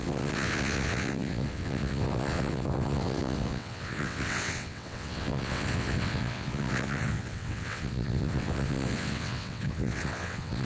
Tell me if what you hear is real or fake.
fake